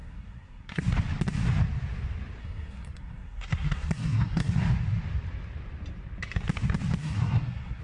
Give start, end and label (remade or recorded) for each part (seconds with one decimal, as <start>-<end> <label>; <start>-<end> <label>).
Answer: 0.0-0.8 remade; 0.8-2.4 recorded; 2.4-4.5 remade; 4.5-7.0 recorded; 7.0-7.8 remade